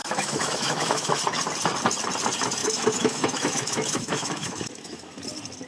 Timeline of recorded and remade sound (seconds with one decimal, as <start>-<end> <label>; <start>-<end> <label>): 0.0-1.2 remade; 1.2-2.6 recorded; 2.6-5.2 remade; 5.2-5.7 recorded